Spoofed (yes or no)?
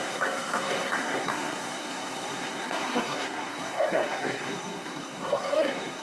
yes